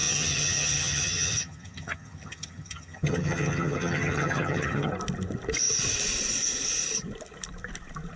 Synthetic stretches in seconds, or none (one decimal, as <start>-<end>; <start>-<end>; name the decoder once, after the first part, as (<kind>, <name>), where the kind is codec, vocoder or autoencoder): 0.0-4.9 (vocoder, HiFi-GAN)